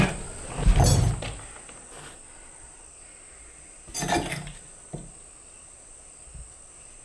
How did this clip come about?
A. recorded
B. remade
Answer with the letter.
A